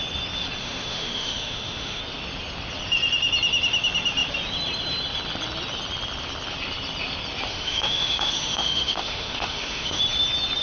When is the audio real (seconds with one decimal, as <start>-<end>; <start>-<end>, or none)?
0.0-0.6; 2.0-7.5; 10.0-10.6